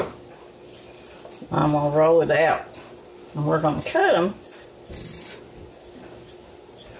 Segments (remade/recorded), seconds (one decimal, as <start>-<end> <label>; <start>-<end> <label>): 0.0-4.0 recorded; 4.0-4.9 remade; 4.9-7.0 recorded